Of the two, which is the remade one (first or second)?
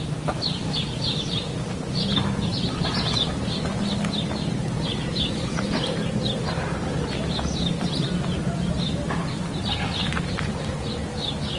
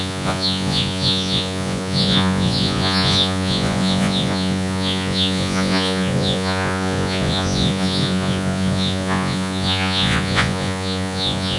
second